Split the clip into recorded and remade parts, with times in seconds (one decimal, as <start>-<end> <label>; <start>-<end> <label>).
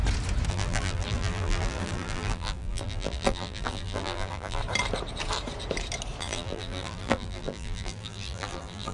0.0-0.5 recorded; 0.5-4.6 remade; 4.6-6.2 recorded; 6.2-8.9 remade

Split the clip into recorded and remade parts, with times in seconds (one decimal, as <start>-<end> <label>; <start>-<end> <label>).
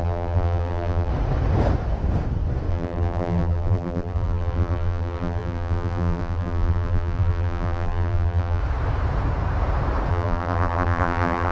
0.0-1.1 remade; 1.1-2.7 recorded; 2.7-8.6 remade; 8.6-10.1 recorded; 10.1-11.5 remade